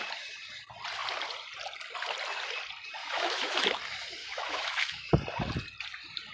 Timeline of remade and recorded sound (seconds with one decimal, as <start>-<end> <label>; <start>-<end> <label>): 0.0-3.0 recorded; 3.0-3.8 remade; 3.8-4.2 recorded; 4.2-5.1 remade; 5.1-6.3 recorded